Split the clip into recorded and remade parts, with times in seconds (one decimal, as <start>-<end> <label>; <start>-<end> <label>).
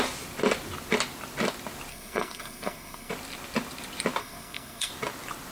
0.0-1.9 recorded; 1.9-3.1 remade; 3.1-4.2 recorded; 4.2-4.9 remade; 4.9-5.5 recorded